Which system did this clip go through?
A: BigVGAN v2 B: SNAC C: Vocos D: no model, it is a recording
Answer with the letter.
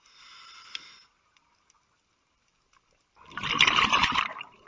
D